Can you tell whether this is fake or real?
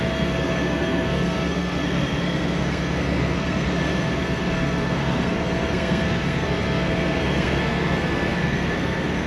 fake